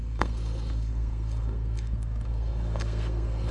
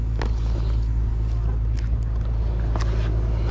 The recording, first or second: second